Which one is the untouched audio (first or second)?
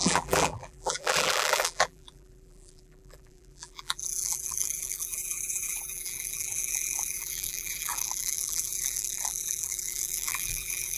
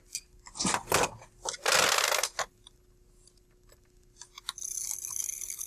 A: second